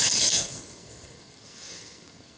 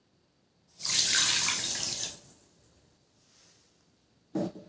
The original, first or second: second